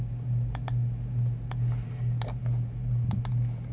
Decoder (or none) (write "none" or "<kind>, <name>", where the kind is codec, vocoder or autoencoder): none